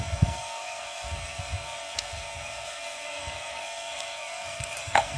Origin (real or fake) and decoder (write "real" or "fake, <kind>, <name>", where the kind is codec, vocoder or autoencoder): fake, codec, SNAC